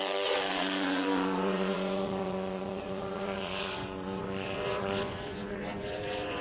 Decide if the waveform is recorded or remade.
remade